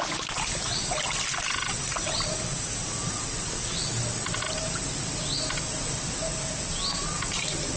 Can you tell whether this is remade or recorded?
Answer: recorded